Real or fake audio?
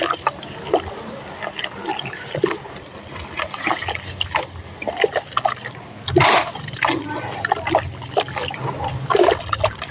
real